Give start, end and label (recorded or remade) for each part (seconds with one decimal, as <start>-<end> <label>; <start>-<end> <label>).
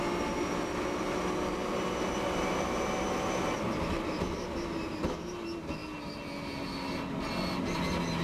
0.0-8.2 recorded